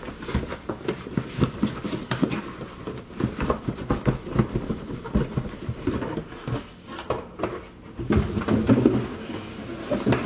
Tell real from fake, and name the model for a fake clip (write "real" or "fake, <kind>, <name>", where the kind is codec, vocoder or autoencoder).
real